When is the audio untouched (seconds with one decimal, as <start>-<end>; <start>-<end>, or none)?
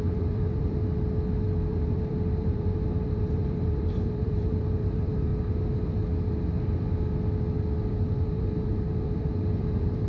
0.8-1.7; 5.3-7.9